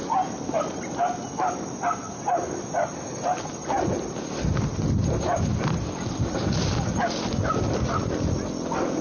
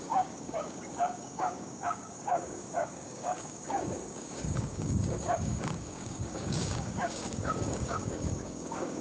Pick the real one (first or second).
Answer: first